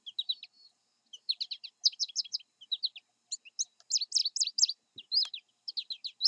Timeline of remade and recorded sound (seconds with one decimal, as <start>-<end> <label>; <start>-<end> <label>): 0.0-6.3 recorded